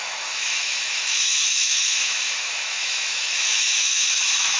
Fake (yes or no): yes